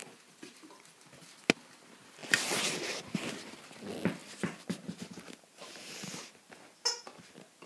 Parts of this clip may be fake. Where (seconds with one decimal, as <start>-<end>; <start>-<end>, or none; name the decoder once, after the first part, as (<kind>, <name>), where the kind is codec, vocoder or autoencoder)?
0.0-0.6 (vocoder, BigVGAN v2); 4.2-6.2